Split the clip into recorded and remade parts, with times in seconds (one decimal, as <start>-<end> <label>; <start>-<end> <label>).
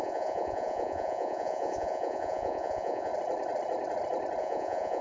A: 0.0-3.1 remade; 3.1-4.4 recorded; 4.4-5.0 remade